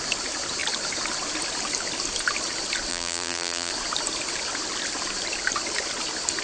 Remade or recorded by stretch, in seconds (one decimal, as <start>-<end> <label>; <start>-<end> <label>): 0.0-2.9 recorded; 2.9-3.7 remade; 3.7-6.4 recorded